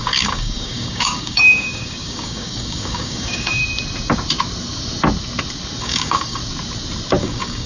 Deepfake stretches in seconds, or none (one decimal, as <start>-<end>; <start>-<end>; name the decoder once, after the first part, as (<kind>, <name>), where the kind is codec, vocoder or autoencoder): 0.0-3.6 (codec, DAC); 5.8-6.4; 7.2-7.7